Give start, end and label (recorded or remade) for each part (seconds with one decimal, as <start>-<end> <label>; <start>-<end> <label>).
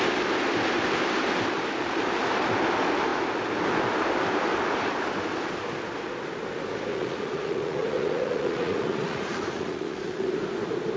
0.0-6.9 recorded; 6.9-10.3 remade; 10.3-11.0 recorded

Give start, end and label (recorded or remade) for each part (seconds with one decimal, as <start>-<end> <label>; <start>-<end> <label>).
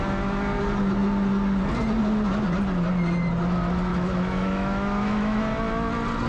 0.0-3.9 recorded; 3.9-5.4 remade; 5.4-6.3 recorded